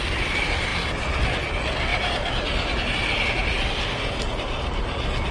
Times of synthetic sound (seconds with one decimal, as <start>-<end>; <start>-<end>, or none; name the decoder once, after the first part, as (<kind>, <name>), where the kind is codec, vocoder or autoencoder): none